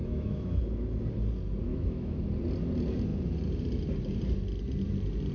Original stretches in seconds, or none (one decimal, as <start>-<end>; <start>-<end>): 0.6-1.7; 2.2-5.3

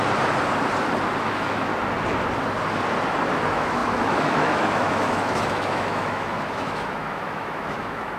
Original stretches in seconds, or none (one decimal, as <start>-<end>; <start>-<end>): 0.0-1.2; 1.7-3.4

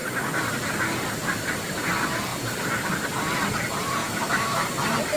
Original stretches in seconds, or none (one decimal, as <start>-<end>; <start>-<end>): 0.0-4.0; 4.7-5.2

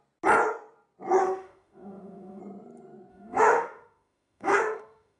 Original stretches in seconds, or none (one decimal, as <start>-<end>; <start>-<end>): 0.0-1.2; 2.4-3.1

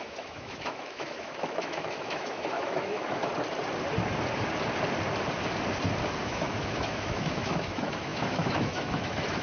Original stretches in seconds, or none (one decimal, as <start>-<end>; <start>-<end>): 3.3-6.2

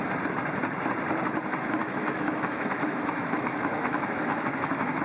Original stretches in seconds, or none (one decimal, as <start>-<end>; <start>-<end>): 0.0-1.8

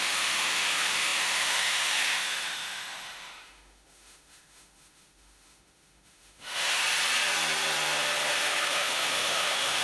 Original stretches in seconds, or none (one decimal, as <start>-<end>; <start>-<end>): 6.8-8.3